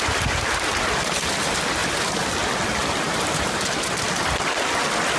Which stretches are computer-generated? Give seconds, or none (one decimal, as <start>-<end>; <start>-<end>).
none